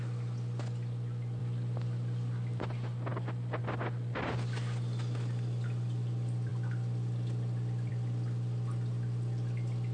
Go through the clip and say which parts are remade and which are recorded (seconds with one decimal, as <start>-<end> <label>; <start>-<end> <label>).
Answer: 0.0-9.9 recorded